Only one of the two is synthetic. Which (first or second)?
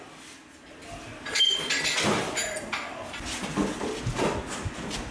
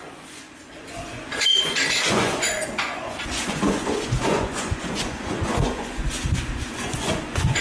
second